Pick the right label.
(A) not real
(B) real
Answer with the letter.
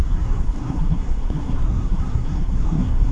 A